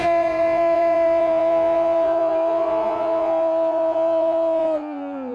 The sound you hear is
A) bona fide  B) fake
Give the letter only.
B